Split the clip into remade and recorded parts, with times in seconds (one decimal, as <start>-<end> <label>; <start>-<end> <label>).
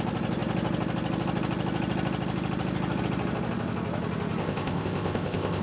0.0-4.4 recorded; 4.4-5.6 remade